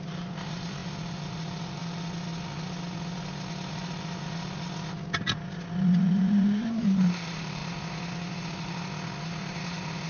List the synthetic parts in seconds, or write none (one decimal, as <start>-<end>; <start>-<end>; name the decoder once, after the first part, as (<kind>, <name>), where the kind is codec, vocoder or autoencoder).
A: 0.0-1.8 (vocoder, BigVGAN v2); 6.0-7.6; 9.2-10.1